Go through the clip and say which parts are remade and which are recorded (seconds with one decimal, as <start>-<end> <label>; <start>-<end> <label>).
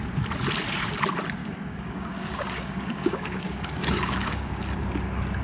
0.0-1.4 recorded; 1.4-4.6 remade; 4.6-5.4 recorded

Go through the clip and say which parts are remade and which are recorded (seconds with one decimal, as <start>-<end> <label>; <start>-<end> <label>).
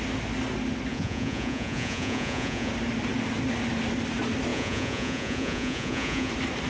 0.0-0.9 recorded; 0.9-2.7 remade; 2.7-4.5 recorded; 4.5-6.3 remade; 6.3-6.7 recorded